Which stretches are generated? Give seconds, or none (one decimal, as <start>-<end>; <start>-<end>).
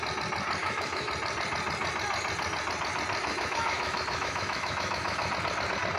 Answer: 0.6-1.1; 3.2-5.3